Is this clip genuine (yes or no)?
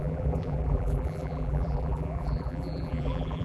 no